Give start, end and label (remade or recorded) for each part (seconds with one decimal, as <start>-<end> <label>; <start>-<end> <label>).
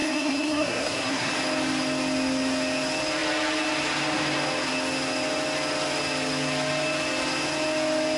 0.0-1.3 remade; 1.3-8.2 recorded